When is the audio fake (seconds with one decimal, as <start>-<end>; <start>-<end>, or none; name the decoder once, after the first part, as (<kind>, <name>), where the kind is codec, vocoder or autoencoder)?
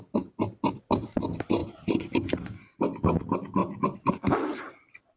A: 1.6-2.8 (vocoder, BigVGAN v2)